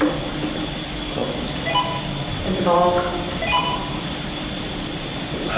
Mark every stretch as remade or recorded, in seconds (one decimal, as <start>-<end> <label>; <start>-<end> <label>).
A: 0.0-2.3 recorded; 2.3-5.6 remade